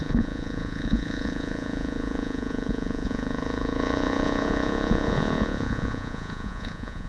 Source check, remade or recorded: remade